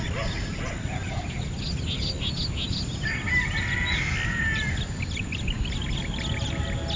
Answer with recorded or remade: recorded